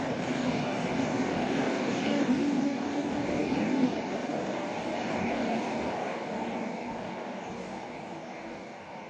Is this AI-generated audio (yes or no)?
yes